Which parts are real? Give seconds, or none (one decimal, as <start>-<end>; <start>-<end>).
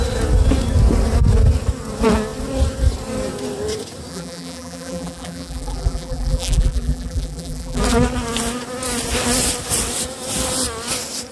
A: 0.0-4.1; 7.8-11.3